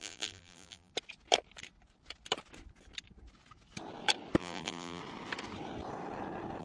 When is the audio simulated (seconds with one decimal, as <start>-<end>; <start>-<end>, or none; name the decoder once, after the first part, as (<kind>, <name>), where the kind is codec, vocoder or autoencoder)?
0.0-0.9 (vocoder, BigVGAN v2); 4.4-5.0